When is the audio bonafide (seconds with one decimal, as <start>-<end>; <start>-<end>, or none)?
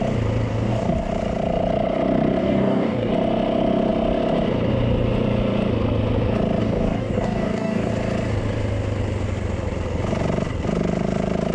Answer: 0.0-0.5; 1.1-2.4; 3.1-6.6; 7.9-11.5